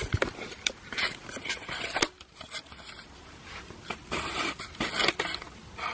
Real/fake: real